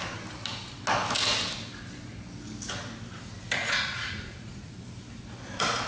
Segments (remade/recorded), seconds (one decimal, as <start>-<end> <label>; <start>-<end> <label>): 0.0-3.6 recorded; 3.6-4.8 remade; 4.8-5.9 recorded